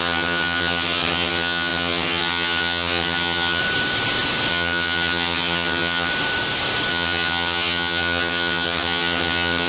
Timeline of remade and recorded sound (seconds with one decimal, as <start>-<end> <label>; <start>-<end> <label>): 0.0-3.6 remade; 3.6-4.5 recorded; 4.5-6.1 remade; 6.1-6.9 recorded; 6.9-9.7 remade